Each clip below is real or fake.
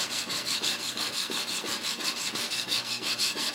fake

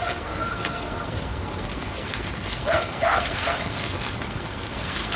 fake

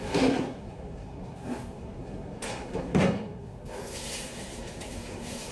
fake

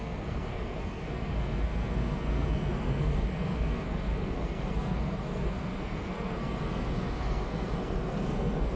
fake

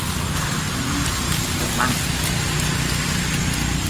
real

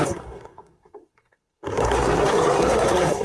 fake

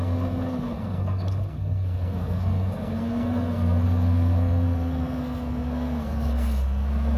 fake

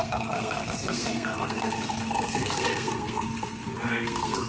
fake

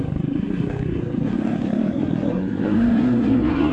fake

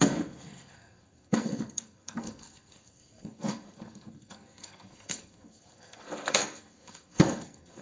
fake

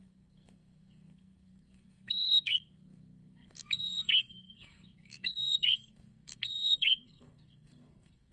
fake